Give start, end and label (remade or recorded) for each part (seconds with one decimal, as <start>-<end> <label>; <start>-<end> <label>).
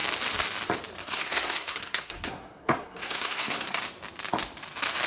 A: 0.0-1.0 recorded; 1.0-3.8 remade; 3.8-5.1 recorded